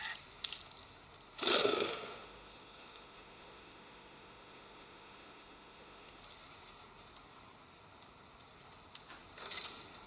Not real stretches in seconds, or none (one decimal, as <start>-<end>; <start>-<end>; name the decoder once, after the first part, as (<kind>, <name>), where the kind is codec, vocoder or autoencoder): 1.6-6.2 (autoencoder, DAC-VAE)